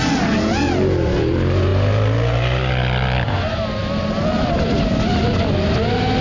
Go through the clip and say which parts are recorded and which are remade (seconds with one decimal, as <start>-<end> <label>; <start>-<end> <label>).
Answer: 0.0-6.2 recorded